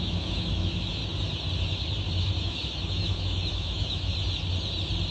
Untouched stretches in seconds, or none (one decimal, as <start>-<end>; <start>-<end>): 1.0-2.2; 4.1-5.1